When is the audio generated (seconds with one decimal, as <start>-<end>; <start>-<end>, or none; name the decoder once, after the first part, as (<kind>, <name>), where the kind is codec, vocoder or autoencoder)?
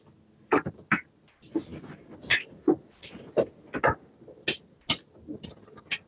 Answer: none